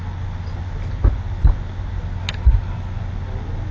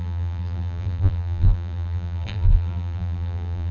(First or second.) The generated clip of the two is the second